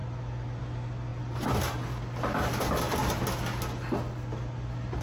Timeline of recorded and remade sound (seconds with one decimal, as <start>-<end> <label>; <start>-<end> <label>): 0.0-5.0 recorded